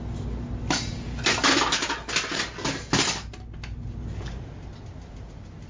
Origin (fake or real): real